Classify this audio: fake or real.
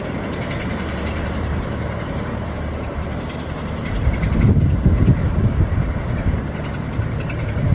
fake